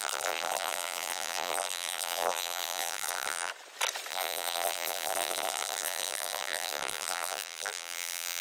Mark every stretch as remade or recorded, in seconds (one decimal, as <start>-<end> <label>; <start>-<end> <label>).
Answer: 0.0-3.5 remade; 3.5-4.1 recorded; 4.1-8.4 remade